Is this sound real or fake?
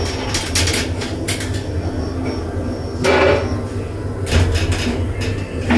real